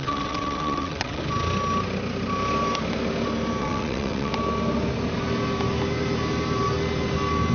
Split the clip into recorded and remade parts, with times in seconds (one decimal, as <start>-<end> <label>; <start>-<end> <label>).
0.0-1.2 remade; 1.2-3.6 recorded; 3.6-4.3 remade; 4.3-7.5 recorded